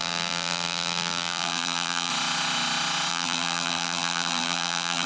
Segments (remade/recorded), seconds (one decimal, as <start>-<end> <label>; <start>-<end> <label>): 0.0-2.1 remade; 2.1-3.1 recorded; 3.1-5.1 remade